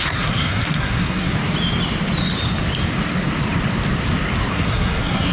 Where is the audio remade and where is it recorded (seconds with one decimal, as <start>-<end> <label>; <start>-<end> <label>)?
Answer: 0.0-1.3 remade; 1.3-4.5 recorded; 4.5-5.3 remade